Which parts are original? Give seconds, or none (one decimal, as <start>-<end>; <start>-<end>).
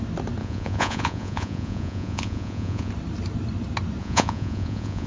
0.0-0.4; 2.9-4.0